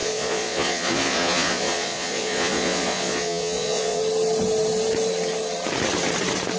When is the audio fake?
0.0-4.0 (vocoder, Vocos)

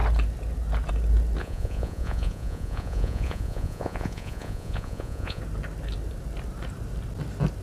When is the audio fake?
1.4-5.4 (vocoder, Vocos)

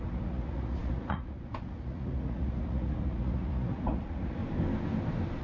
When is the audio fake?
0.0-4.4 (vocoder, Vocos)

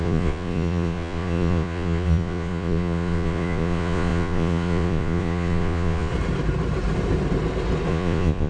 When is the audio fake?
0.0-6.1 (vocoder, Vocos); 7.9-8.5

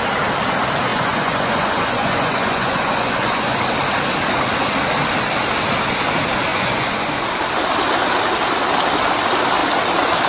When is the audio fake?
0.9-3.6 (vocoder, Vocos); 6.5-7.2

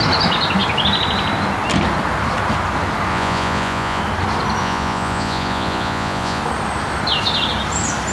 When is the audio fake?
3.1-4.0 (vocoder, Vocos); 4.6-6.4

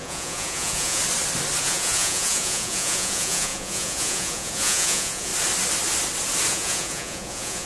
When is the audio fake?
0.0-1.0 (vocoder, Vocos); 1.6-5.3; 6.5-7.7